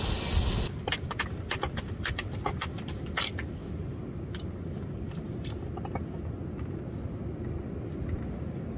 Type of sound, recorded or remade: recorded